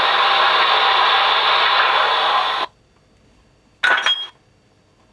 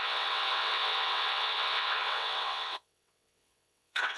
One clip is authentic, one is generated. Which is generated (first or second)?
second